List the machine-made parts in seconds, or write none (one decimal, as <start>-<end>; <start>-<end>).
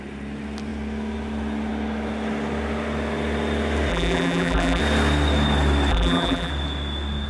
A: 3.9-4.8; 5.9-6.5